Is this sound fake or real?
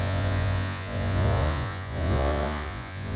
fake